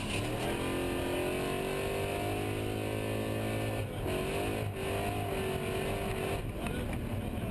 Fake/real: real